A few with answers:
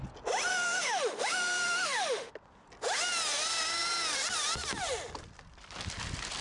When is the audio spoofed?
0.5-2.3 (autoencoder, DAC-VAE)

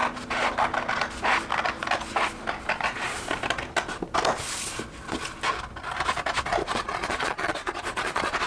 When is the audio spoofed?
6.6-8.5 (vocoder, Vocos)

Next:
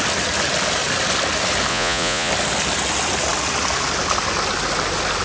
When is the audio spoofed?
1.7-2.3 (vocoder, Vocos)